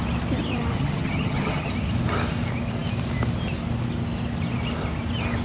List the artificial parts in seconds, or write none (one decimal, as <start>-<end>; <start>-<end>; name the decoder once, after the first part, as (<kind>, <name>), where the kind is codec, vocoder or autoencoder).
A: 0.7-1.7 (vocoder, HiFi-GAN)